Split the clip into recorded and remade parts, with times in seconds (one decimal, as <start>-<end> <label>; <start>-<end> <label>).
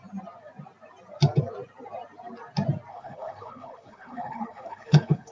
0.0-2.9 recorded; 2.9-5.3 remade